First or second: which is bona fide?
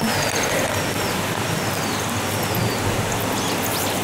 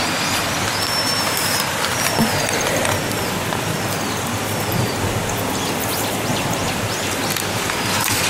first